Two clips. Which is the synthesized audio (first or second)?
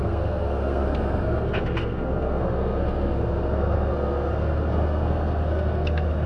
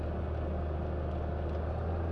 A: first